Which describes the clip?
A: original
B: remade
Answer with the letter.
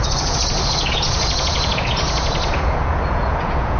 B